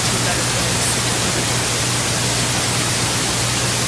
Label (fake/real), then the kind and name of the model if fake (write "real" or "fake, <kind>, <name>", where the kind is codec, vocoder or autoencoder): real